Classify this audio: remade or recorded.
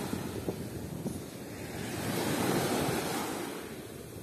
recorded